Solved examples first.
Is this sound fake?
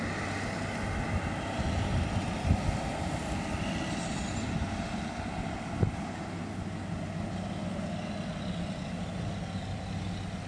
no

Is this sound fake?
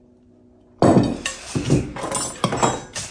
no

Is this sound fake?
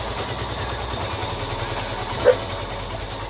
no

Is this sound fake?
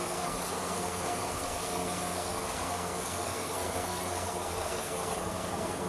yes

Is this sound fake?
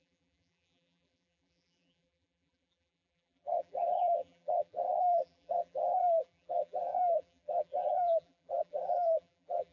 yes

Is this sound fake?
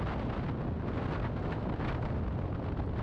no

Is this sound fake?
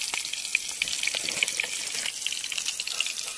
no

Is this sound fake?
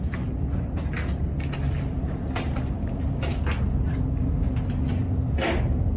no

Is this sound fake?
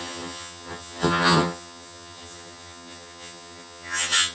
yes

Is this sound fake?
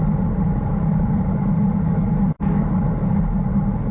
no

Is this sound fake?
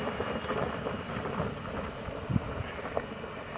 no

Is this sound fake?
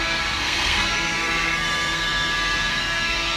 yes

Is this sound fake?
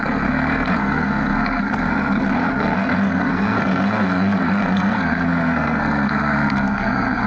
yes